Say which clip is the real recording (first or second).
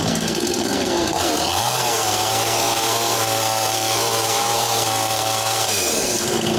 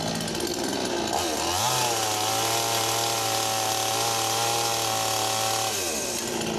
second